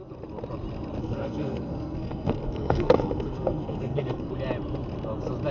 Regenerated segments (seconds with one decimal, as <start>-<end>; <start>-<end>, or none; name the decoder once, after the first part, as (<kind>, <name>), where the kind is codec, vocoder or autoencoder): 1.0-4.3 (codec, SNAC)